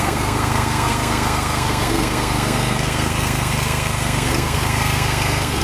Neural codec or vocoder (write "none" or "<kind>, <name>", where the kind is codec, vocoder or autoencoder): codec, SNAC